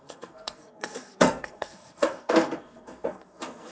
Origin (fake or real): fake